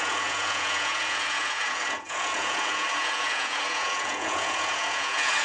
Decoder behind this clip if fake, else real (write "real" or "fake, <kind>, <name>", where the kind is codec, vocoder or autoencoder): fake, vocoder, Vocos